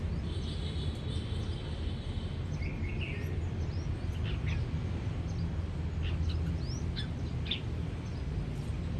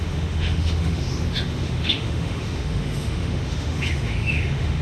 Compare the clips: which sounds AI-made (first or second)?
second